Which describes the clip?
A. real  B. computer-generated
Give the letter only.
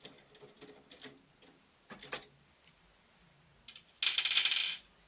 A